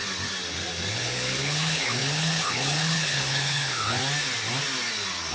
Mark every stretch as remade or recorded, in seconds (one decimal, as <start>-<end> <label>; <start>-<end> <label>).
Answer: 0.0-0.9 recorded; 0.9-4.0 remade; 4.0-5.3 recorded